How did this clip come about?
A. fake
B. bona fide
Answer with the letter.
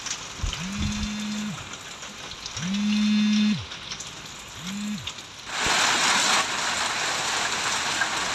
B